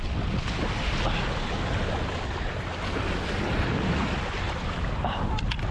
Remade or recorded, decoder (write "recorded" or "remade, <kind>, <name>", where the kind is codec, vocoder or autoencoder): recorded